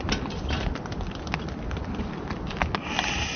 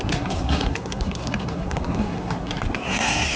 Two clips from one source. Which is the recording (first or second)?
first